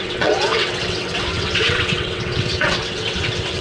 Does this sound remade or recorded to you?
remade